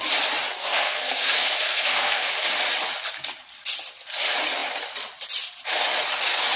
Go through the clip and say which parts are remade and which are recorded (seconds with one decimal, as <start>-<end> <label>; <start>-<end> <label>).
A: 0.0-0.6 recorded; 0.6-2.3 remade; 2.3-6.6 recorded